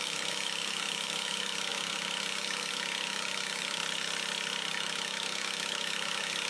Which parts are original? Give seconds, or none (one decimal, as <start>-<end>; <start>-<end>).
3.8-4.7